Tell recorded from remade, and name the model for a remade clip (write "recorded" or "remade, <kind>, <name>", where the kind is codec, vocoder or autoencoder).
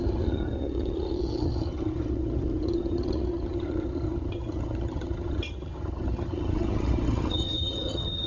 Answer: remade, vocoder, HiFi-GAN